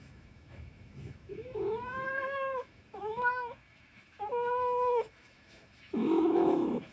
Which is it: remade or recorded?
remade